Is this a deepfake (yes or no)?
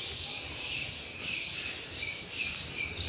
no